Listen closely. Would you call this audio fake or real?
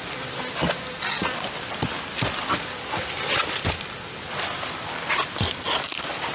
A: real